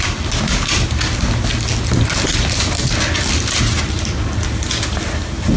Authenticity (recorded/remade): recorded